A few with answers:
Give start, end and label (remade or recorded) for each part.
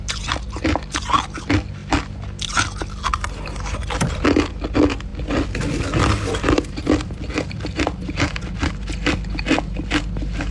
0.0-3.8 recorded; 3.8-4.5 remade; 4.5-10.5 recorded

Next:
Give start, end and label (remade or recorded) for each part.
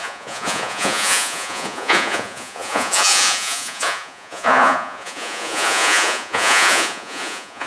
0.0-7.7 remade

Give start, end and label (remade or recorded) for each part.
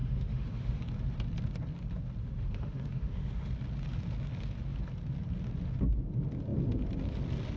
0.0-0.8 remade; 0.8-2.2 recorded; 2.2-3.5 remade; 3.5-7.6 recorded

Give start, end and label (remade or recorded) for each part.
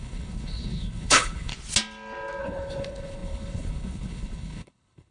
0.0-1.5 remade; 1.5-2.4 recorded; 2.4-5.1 remade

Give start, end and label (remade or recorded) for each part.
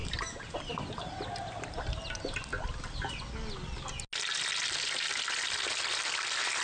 0.0-6.6 recorded